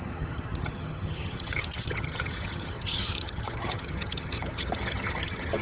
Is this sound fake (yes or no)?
yes